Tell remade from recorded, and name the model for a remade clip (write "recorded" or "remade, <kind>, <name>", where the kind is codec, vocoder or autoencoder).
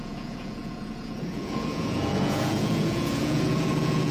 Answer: remade, vocoder, Vocos